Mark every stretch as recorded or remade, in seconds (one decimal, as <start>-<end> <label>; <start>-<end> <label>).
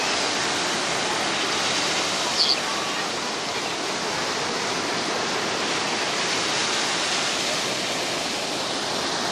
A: 0.0-9.3 recorded